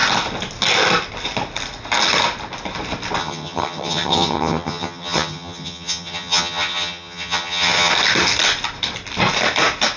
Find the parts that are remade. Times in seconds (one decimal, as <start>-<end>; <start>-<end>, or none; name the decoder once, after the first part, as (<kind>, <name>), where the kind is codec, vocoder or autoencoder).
3.2-7.9 (vocoder, HiFi-GAN)